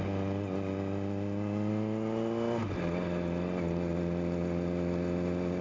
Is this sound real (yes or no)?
yes